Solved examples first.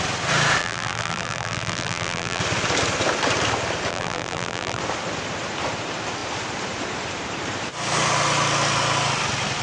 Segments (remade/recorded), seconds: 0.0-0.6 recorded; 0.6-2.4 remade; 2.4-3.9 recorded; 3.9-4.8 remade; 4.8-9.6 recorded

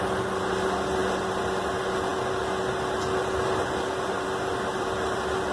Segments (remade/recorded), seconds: 0.0-1.0 recorded; 1.0-1.7 remade; 1.7-5.5 recorded

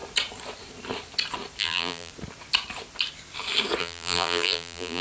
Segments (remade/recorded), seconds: 0.0-1.6 recorded; 1.6-2.1 remade; 2.1-3.8 recorded; 3.8-5.0 remade

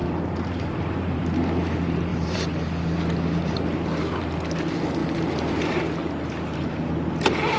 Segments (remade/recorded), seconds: 0.0-1.2 remade; 1.2-2.1 recorded; 2.1-4.2 remade; 4.2-5.0 recorded; 5.0-5.7 remade; 5.7-7.6 recorded

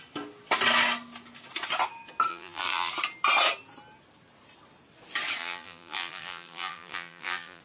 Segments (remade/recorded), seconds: 0.0-2.3 recorded; 2.3-2.9 remade; 2.9-5.4 recorded; 5.4-7.6 remade